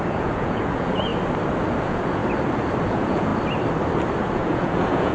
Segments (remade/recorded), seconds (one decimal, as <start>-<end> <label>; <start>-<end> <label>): 0.0-1.1 remade; 1.1-1.8 recorded; 1.8-2.2 remade; 2.2-2.9 recorded; 2.9-3.3 remade; 3.3-4.2 recorded; 4.2-5.1 remade